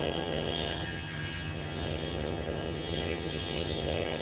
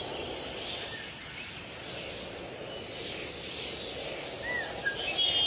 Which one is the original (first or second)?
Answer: second